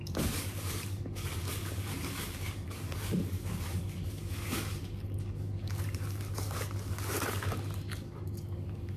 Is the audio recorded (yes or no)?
no